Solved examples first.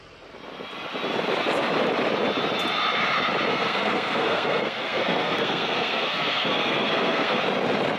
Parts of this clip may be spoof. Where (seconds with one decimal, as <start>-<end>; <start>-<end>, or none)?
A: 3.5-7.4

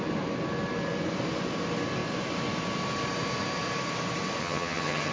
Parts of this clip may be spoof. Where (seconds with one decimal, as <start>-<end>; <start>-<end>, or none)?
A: 4.4-5.1

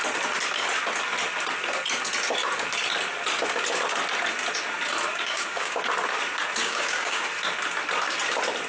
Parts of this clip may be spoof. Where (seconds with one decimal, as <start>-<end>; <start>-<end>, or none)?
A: 5.1-5.8; 6.6-7.2

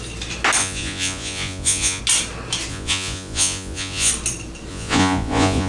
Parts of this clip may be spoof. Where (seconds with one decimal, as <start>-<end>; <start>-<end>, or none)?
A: 0.6-2.0; 2.7-4.1; 4.7-5.7